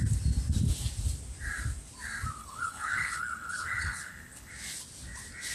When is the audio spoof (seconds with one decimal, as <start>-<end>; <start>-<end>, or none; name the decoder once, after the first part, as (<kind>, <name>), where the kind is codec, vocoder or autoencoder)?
2.4-4.5 (codec, HILCodec)